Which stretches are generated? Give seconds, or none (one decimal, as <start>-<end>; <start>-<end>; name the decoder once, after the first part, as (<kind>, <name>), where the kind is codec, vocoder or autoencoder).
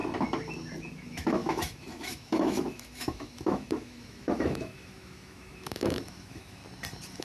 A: 0.9-6.6 (autoencoder, DAC-VAE)